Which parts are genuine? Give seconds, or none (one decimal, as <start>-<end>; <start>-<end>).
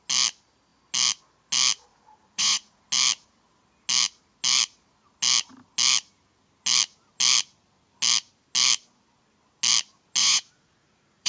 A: 0.0-1.9; 2.8-10.2